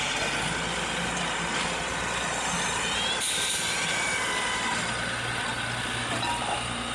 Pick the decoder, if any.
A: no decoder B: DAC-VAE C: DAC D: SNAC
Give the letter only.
A